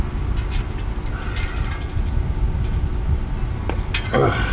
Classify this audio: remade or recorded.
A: recorded